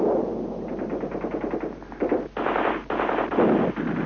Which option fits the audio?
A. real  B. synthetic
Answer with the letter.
A